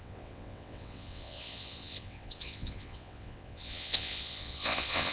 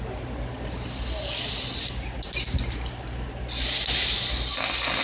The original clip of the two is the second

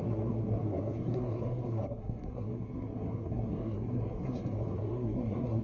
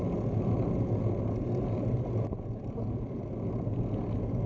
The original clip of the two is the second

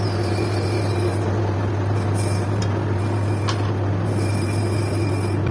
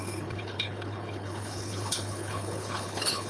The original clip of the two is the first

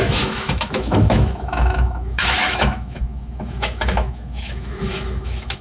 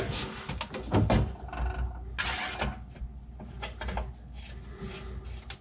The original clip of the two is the second